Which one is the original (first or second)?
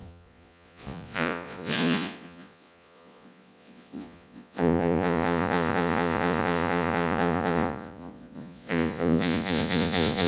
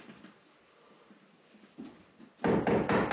second